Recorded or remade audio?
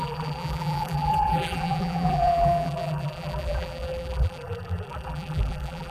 remade